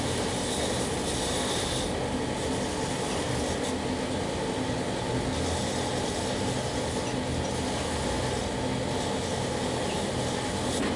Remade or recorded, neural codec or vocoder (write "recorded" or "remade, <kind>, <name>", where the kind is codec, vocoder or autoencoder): recorded